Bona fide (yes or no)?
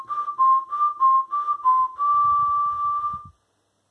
yes